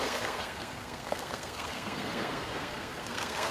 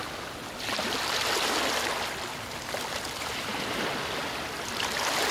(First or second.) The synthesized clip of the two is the first